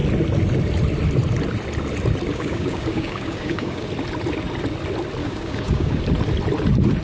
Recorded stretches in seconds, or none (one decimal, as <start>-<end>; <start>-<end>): 0.0-2.3; 3.9-5.2; 6.0-7.0